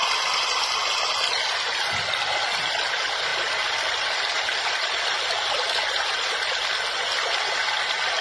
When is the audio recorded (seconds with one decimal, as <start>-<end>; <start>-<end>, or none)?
0.0-3.3; 7.5-8.2